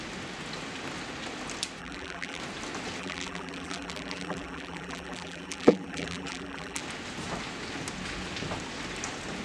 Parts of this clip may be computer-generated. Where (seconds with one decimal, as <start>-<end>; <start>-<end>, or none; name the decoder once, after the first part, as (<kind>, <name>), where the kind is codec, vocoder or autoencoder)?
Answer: 1.8-2.4 (vocoder, BigVGAN v2); 3.0-6.8

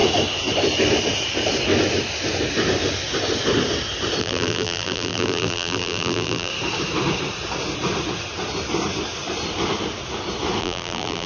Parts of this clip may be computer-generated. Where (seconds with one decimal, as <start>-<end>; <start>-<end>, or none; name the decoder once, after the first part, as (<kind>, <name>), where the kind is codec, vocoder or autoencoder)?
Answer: 4.2-6.5 (vocoder, BigVGAN v2); 10.6-11.3

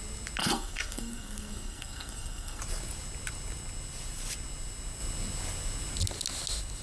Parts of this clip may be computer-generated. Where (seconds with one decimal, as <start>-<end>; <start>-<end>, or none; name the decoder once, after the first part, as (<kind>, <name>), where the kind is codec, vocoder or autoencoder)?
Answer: 0.4-2.6 (codec, SNAC)

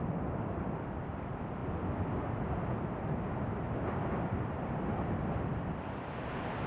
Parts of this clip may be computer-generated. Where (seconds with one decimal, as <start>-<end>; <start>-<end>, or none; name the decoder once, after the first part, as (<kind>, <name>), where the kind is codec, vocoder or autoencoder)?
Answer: 0.0-1.6 (vocoder, BigVGAN v2); 3.9-6.7

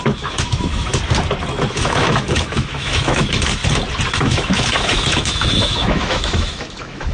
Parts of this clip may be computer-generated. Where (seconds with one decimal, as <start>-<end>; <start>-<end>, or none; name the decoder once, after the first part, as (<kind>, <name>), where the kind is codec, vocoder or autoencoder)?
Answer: 0.0-0.9 (autoencoder, DAC-VAE); 1.7-3.6; 4.1-7.1